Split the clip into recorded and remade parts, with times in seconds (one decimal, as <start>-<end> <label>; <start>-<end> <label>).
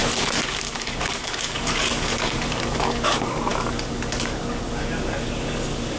0.0-6.0 remade